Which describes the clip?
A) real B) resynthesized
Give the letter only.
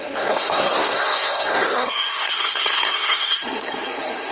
B